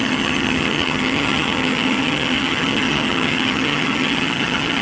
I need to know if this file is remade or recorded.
remade